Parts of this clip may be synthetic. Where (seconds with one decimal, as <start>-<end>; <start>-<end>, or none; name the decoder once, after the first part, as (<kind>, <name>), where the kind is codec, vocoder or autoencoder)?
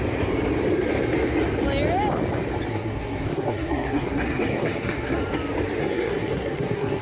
2.7-5.2 (codec, SNAC); 5.8-7.0